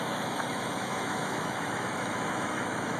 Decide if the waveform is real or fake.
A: fake